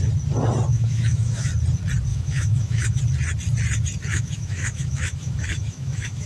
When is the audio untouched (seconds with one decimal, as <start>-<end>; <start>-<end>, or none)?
0.0-0.7; 1.5-2.1; 3.0-4.1